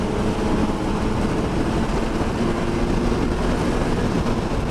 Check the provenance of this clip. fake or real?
real